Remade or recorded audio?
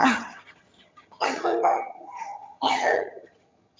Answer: remade